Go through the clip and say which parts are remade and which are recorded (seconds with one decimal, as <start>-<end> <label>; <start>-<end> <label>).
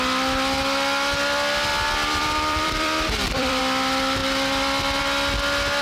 0.0-1.7 recorded; 1.7-3.6 remade; 3.6-5.8 recorded